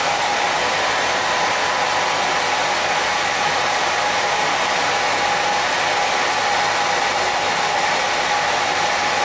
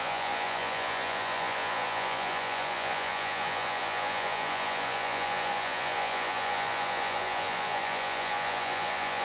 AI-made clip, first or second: second